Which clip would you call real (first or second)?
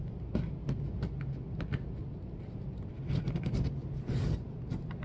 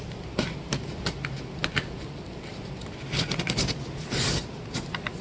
first